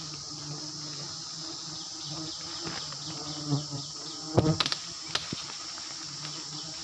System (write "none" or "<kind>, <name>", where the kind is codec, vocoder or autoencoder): none